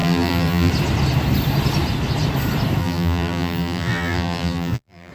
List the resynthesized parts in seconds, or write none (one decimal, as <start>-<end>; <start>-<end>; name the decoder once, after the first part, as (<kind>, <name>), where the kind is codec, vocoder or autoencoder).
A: 0.0-0.7 (vocoder, BigVGAN v2); 2.8-5.1